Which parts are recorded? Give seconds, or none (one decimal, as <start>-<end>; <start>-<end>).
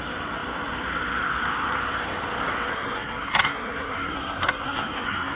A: 0.0-2.7